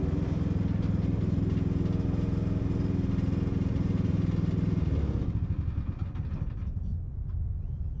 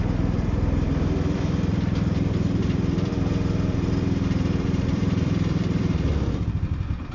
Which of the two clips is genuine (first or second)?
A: first